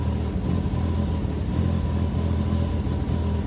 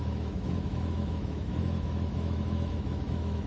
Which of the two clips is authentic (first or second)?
first